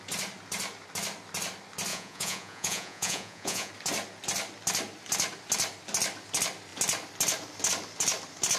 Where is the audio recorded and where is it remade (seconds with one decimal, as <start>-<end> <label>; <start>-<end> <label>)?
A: 0.0-1.9 recorded; 1.9-3.7 remade; 3.7-8.6 recorded